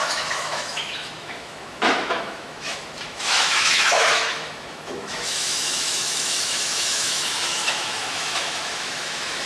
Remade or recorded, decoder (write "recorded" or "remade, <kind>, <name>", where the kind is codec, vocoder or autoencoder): remade, autoencoder, DAC-VAE